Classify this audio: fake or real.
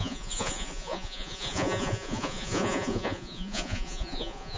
fake